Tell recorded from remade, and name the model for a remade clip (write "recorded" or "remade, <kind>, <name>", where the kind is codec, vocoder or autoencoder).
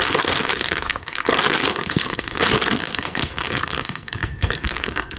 remade, codec, SNAC